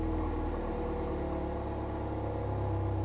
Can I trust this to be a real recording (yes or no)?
yes